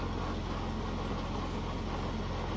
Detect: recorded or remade recorded